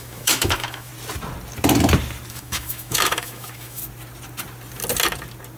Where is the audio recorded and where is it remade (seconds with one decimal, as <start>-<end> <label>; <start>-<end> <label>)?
0.0-0.9 remade; 0.9-2.3 recorded; 2.3-3.8 remade; 3.8-5.6 recorded